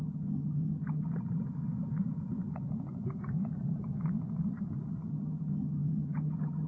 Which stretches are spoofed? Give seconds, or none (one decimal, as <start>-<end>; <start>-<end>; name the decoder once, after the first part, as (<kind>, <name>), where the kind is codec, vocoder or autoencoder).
0.0-1.1 (vocoder, HiFi-GAN); 5.1-6.7